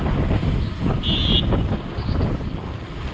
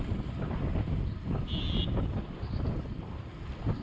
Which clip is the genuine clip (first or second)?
first